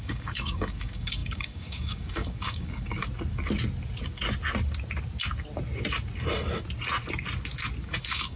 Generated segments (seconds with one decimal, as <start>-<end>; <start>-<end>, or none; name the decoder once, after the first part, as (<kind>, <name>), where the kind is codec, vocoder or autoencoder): 0.0-3.0 (codec, DAC); 8.0-8.4